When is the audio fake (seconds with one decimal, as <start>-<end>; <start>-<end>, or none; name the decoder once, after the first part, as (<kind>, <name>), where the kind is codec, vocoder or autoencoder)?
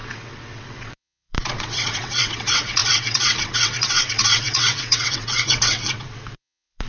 0.0-6.9 (vocoder, WaveNeXt)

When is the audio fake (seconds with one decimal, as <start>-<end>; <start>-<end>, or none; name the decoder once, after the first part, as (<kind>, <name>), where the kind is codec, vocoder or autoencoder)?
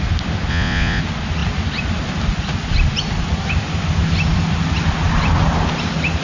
0.5-1.0 (vocoder, Vocos)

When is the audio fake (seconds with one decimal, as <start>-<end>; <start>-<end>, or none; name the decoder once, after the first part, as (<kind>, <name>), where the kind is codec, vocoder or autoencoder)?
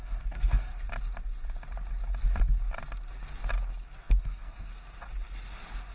0.0-0.7 (codec, SNAC); 4.2-4.7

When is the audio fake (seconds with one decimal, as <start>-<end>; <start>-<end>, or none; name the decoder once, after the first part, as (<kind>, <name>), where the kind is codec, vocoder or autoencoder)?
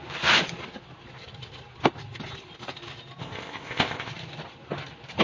3.2-4.1 (codec, ZipCodec)